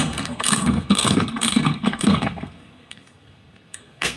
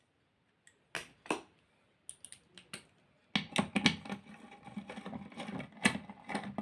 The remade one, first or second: first